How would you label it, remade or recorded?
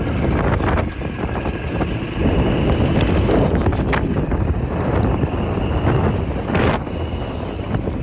recorded